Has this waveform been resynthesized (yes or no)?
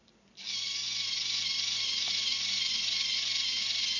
no